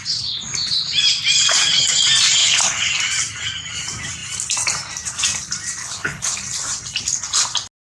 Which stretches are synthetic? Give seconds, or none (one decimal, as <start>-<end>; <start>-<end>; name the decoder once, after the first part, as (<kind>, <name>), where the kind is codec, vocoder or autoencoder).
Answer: 2.4-2.9 (codec, HILCodec); 5.8-6.4